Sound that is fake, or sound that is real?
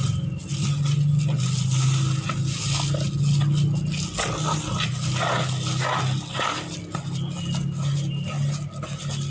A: real